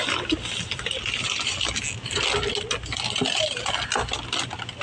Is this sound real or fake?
real